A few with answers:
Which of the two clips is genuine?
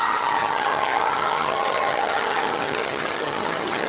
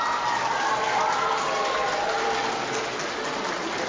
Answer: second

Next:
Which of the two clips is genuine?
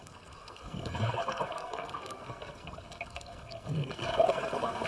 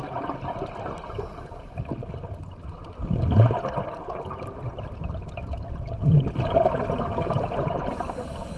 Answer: second